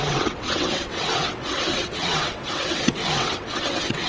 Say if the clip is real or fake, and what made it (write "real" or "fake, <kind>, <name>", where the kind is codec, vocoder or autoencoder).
fake, vocoder, WaveNeXt